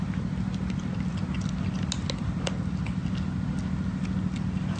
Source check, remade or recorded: recorded